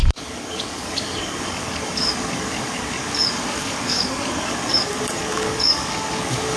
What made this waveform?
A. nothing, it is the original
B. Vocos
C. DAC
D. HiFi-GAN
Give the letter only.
C